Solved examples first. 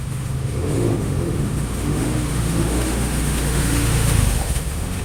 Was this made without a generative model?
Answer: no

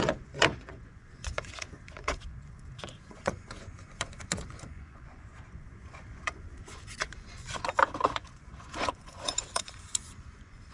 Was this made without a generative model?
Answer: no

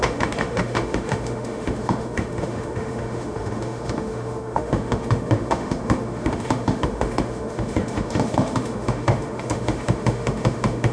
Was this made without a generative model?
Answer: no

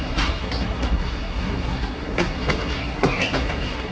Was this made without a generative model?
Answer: no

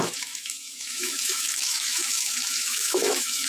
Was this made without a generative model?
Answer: no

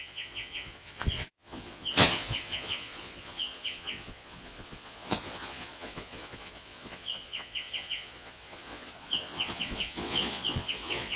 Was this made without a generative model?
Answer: no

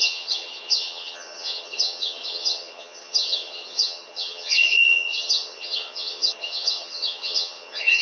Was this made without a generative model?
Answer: no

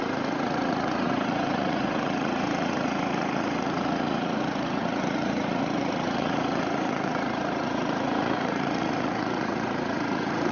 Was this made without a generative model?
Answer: no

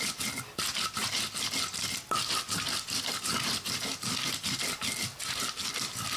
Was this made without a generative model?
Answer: yes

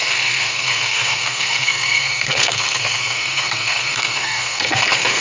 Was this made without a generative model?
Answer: no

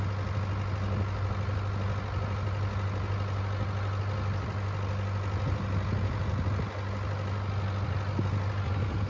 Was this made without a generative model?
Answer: yes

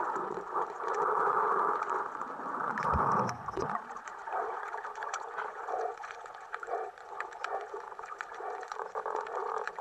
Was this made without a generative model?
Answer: no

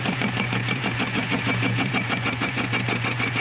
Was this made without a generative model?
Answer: no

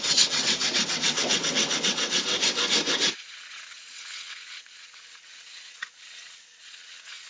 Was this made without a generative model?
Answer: no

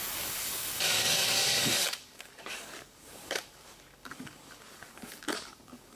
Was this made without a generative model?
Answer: no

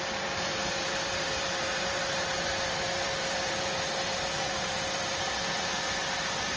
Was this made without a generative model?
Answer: no